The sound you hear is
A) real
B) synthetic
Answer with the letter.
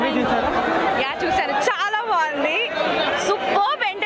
A